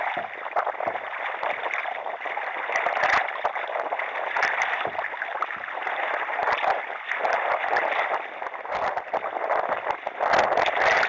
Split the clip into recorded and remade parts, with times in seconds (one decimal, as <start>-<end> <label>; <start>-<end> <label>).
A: 0.0-11.1 recorded